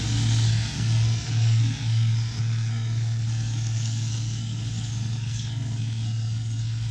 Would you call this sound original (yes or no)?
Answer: no